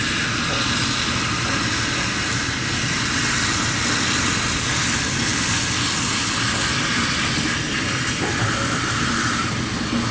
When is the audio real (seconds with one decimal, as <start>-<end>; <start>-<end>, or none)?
0.0-10.1